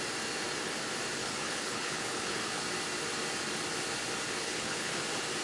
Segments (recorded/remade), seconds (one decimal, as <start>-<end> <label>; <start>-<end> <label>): 0.0-1.2 recorded; 1.2-2.6 remade; 2.6-4.4 recorded; 4.4-5.0 remade; 5.0-5.4 recorded